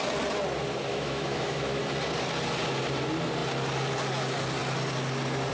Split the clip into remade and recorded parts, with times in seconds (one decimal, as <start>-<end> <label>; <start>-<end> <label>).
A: 0.0-0.9 recorded; 0.9-1.8 remade; 1.8-5.5 recorded